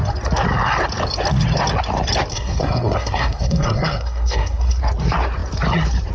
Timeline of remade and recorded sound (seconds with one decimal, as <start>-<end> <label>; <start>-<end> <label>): 0.0-2.3 recorded; 2.3-4.8 remade; 4.8-6.1 recorded